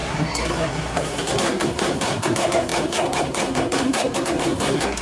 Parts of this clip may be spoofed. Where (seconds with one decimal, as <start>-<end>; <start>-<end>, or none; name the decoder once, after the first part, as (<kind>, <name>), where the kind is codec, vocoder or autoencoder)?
0.0-5.0 (codec, SNAC)